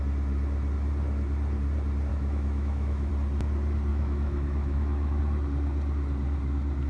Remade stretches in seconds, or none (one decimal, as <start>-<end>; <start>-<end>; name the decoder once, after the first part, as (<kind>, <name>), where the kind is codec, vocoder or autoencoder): 2.1-3.1 (autoencoder, DAC-VAE); 3.9-5.2